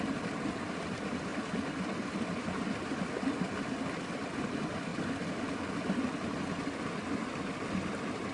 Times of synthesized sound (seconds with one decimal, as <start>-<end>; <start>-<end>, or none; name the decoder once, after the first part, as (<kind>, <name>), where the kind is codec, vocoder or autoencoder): 1.3-3.0 (vocoder, BigVGAN v2)